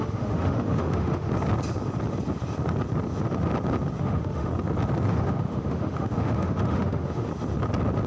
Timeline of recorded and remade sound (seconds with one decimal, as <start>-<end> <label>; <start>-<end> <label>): 0.0-1.3 remade; 1.3-4.0 recorded; 4.0-4.5 remade; 4.5-5.1 recorded; 5.1-7.3 remade; 7.3-8.1 recorded